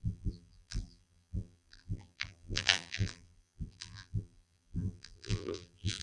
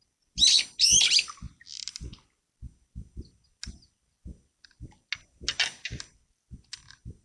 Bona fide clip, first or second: second